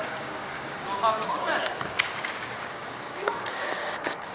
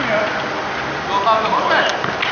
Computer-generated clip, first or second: first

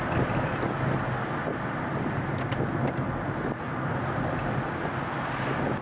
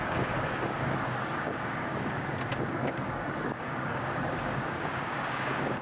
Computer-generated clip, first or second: second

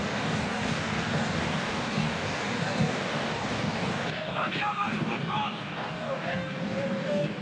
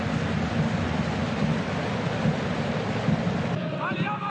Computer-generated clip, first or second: first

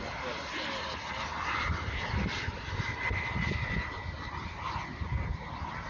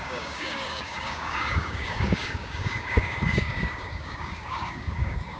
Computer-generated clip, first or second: second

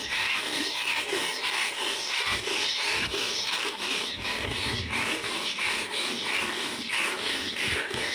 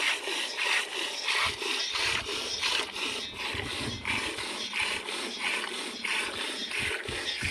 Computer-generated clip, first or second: first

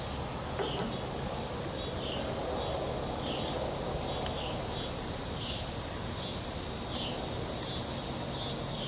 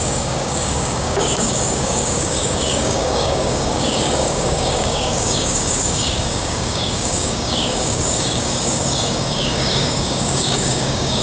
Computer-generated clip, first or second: second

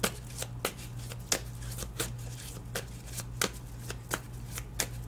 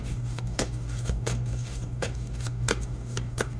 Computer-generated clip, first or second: second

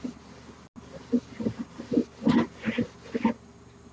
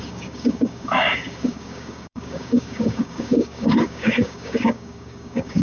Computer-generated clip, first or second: second